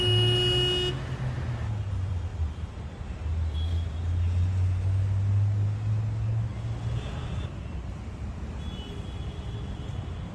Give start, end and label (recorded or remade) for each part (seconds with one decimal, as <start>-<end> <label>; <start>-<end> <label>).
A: 0.0-10.3 recorded

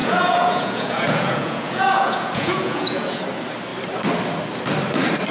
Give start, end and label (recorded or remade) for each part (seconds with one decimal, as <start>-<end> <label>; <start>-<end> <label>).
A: 0.0-3.2 remade; 3.2-5.3 recorded

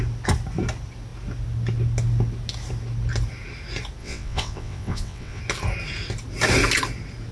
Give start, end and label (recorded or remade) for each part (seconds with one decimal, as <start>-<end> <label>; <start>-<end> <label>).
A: 0.0-4.0 recorded; 4.0-5.4 remade; 5.4-7.3 recorded